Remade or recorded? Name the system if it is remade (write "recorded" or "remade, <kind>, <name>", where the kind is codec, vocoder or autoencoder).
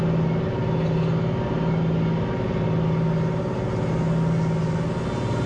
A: recorded